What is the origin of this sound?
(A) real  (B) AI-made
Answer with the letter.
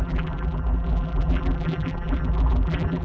B